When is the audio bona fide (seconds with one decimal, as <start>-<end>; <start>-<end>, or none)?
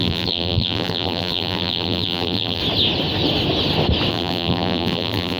2.6-4.1